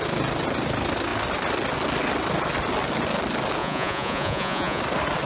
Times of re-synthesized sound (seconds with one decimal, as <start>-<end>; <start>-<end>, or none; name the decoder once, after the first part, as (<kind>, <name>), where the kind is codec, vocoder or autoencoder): 3.6-4.8 (vocoder, Vocos)